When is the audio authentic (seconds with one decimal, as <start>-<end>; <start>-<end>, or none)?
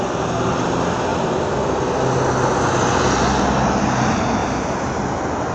0.0-5.5